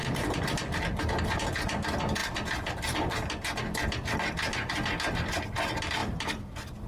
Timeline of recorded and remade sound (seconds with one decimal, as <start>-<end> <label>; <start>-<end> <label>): 0.0-0.8 remade; 0.8-6.0 recorded; 6.0-6.9 remade